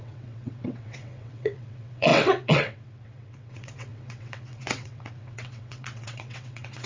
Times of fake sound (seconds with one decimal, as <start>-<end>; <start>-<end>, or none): 0.0-6.9